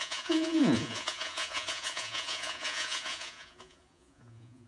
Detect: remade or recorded remade